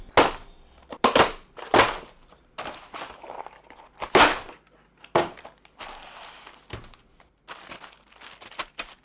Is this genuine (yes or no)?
yes